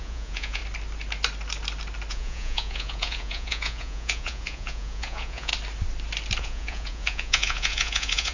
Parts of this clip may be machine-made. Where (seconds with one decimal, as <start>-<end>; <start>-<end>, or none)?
0.0-0.6; 2.1-5.5; 6.4-8.3